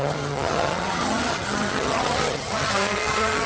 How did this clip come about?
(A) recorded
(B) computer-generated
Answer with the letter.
B